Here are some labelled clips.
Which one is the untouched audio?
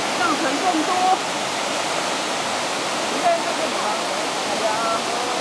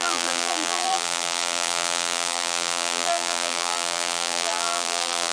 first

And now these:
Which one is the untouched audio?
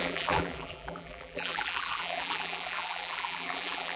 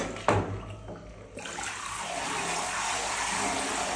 second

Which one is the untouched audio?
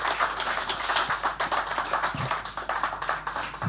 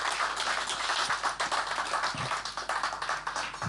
second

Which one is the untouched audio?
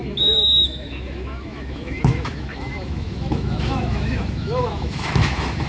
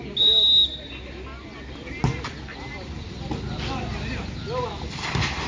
second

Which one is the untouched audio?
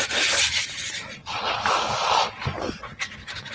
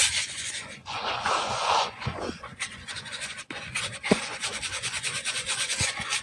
first